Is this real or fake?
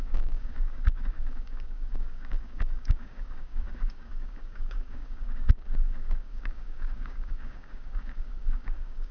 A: fake